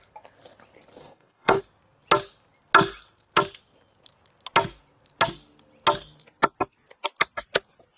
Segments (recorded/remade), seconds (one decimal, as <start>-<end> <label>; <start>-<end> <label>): 0.0-1.0 recorded; 1.0-1.6 remade; 1.6-8.0 recorded